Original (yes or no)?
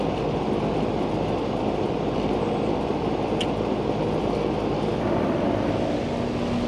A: yes